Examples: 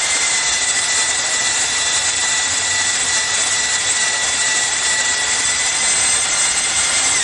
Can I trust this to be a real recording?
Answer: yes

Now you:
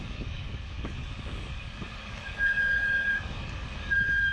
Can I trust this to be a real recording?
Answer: no